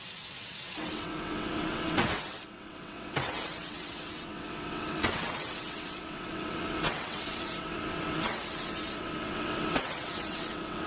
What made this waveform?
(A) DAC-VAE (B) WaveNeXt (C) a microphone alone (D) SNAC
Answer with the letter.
B